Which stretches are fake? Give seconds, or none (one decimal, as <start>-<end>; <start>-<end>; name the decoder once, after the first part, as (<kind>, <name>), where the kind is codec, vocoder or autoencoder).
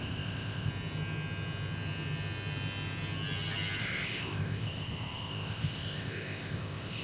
0.0-0.7 (codec, ZipCodec); 3.8-7.0